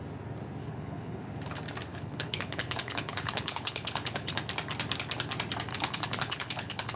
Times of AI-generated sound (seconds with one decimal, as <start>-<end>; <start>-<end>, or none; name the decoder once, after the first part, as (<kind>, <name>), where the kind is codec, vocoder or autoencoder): 0.6-1.3 (codec, HILCodec); 1.9-4.4; 5.7-7.0